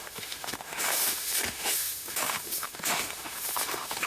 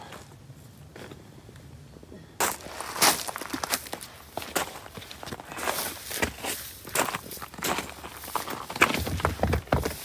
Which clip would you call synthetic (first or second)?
first